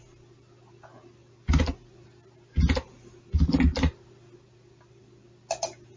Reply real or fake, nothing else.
real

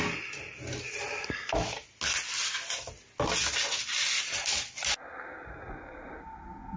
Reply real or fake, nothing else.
real